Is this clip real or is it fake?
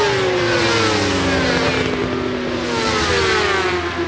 real